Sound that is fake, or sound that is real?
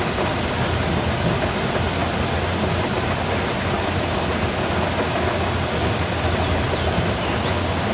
real